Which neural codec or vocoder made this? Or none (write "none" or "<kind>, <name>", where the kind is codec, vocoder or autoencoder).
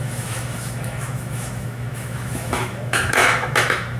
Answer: autoencoder, DAC-VAE